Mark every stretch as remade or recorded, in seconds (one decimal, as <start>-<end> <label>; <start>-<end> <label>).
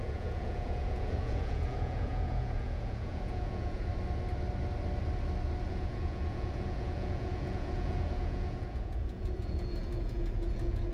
0.0-3.9 remade; 3.9-5.7 recorded; 5.7-10.9 remade